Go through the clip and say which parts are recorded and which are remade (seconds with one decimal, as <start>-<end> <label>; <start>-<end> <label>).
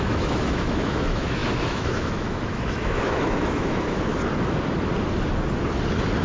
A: 0.0-4.1 remade; 4.1-6.2 recorded